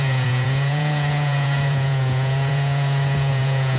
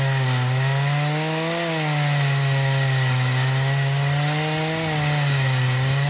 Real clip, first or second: second